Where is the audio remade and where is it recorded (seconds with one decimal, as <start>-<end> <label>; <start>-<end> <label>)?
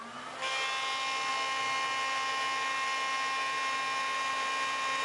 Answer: 0.0-5.0 recorded